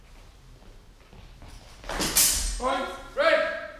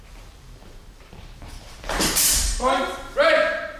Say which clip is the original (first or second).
first